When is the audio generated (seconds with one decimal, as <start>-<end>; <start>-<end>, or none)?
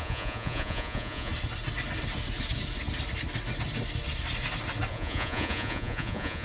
0.0-1.3; 4.9-6.4